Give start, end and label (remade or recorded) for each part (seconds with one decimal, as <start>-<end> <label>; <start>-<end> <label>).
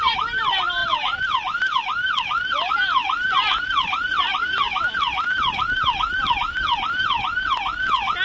0.0-8.2 recorded